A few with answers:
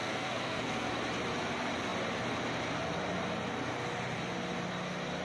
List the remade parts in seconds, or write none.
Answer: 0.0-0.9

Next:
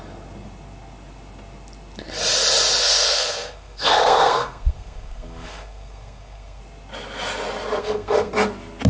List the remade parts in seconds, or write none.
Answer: 2.8-6.6; 7.8-8.3